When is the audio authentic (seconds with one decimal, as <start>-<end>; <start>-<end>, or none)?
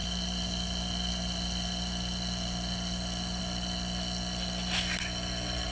0.0-5.7